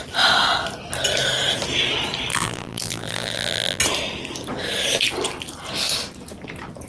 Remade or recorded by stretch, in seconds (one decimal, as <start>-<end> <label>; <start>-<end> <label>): 0.0-2.3 recorded; 2.3-3.8 remade; 3.8-6.9 recorded